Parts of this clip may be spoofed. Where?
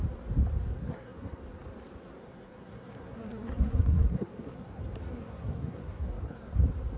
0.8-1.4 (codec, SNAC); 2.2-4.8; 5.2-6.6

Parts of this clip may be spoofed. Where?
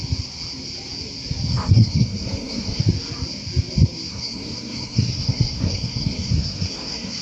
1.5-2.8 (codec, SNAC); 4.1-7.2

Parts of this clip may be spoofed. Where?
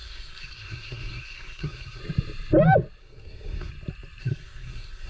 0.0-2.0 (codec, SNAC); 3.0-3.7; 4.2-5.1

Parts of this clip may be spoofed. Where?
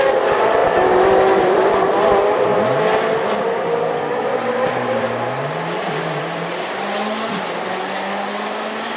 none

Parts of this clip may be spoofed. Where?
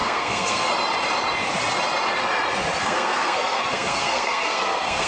0.0-0.7 (codec, SNAC); 2.8-5.1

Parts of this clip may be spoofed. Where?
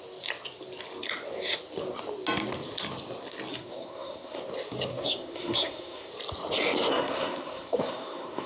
3.5-4.4 (codec, SNAC); 4.9-6.1; 6.9-8.5